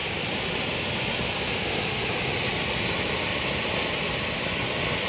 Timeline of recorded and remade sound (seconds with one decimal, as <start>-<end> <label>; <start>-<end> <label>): 0.0-5.1 recorded

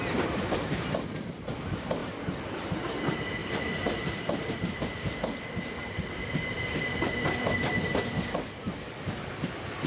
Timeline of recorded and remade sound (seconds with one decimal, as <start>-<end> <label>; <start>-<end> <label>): 0.0-3.4 recorded; 3.4-7.6 remade; 7.6-9.9 recorded

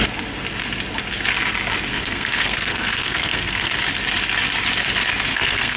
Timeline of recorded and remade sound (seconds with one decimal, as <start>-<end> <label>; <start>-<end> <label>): 0.0-1.9 recorded; 1.9-3.7 remade; 3.7-5.3 recorded; 5.3-5.8 remade

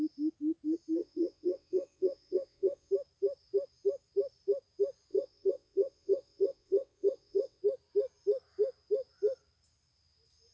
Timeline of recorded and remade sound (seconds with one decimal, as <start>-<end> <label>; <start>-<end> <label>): 0.0-1.0 recorded; 1.0-2.9 remade; 2.9-5.1 recorded; 5.1-7.6 remade; 7.6-10.5 recorded

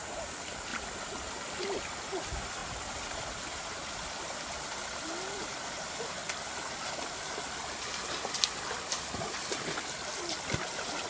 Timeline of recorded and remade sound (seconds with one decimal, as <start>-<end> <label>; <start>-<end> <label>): 0.0-6.2 remade; 6.2-10.6 recorded; 10.6-11.1 remade